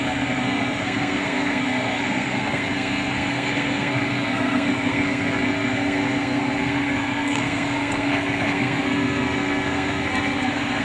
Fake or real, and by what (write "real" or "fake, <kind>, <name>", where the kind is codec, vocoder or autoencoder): fake, codec, SNAC